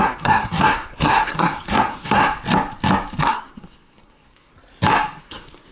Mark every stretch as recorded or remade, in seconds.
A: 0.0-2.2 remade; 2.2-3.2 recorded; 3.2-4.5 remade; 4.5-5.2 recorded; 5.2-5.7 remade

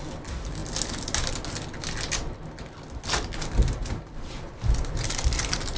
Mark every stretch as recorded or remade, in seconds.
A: 0.0-5.8 recorded